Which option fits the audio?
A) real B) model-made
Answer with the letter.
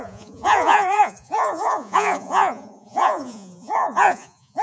B